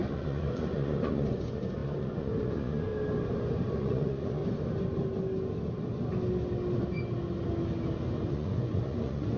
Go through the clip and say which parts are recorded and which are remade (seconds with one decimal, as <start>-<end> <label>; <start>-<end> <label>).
0.0-2.9 remade; 2.9-3.7 recorded; 3.7-4.4 remade; 4.4-8.3 recorded; 8.3-9.4 remade